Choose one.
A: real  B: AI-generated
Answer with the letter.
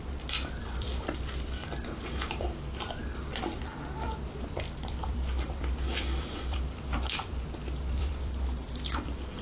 B